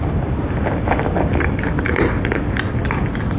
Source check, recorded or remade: recorded